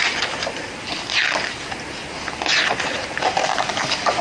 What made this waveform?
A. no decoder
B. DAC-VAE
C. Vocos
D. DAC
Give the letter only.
A